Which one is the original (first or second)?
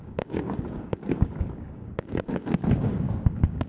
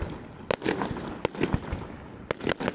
second